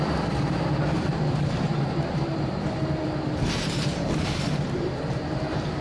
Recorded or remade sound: remade